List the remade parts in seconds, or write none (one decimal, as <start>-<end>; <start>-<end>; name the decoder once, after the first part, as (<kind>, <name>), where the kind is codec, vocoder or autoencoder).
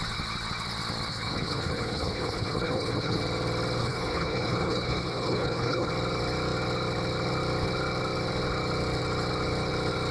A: 1.1-3.2 (codec, HILCodec); 3.8-5.9